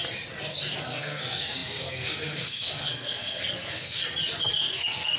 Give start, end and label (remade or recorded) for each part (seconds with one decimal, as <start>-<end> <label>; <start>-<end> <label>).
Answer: 0.0-0.8 recorded; 0.8-4.0 remade; 4.0-4.5 recorded; 4.5-5.2 remade